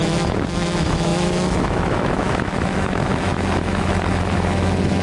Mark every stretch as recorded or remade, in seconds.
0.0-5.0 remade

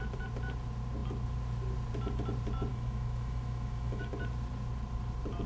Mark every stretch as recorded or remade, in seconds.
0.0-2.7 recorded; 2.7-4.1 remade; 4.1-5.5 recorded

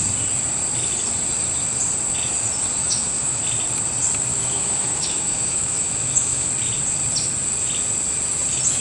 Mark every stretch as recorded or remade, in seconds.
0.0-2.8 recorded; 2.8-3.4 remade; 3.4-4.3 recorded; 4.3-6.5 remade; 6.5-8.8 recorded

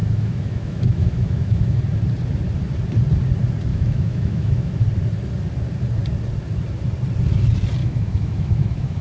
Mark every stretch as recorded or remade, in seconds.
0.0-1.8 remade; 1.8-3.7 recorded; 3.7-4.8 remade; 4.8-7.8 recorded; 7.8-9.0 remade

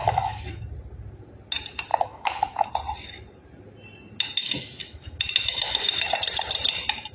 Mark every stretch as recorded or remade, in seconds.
0.0-0.6 remade; 0.6-1.9 recorded; 1.9-2.7 remade; 2.7-4.4 recorded; 4.4-6.1 remade; 6.1-7.1 recorded

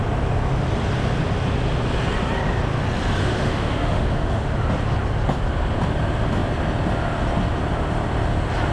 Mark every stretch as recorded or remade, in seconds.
0.0-3.2 recorded; 3.2-4.5 remade; 4.5-8.7 recorded

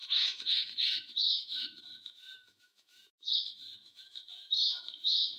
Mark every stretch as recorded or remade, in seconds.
0.0-5.4 remade

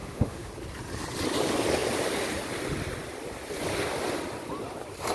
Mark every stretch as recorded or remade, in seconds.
0.0-0.5 remade; 0.5-5.1 recorded